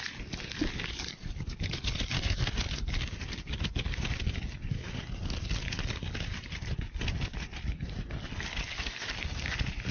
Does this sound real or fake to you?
real